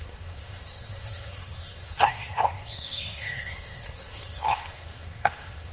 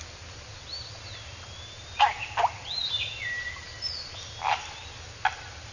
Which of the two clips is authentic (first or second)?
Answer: second